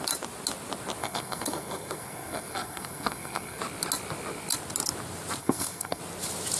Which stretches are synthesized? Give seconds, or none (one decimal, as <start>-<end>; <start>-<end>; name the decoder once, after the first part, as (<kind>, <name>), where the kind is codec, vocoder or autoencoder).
1.0-3.6 (codec, SNAC); 5.4-6.0